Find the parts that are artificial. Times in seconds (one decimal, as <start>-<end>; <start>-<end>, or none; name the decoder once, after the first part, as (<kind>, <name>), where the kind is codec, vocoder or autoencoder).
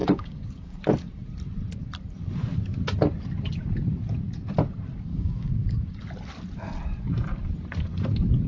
0.0-0.8 (codec, DAC); 5.1-6.0